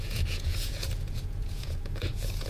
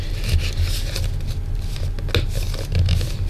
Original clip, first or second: second